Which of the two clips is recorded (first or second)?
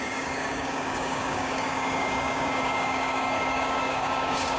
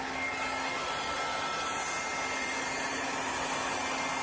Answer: second